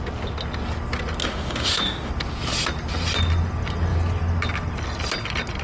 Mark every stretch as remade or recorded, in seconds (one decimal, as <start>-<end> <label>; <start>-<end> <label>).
0.0-1.2 recorded; 1.2-2.1 remade; 2.1-5.6 recorded